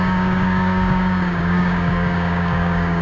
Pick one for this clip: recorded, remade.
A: remade